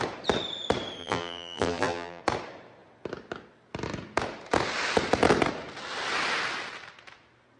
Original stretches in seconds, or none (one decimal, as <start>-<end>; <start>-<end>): 0.0-1.0; 2.2-7.6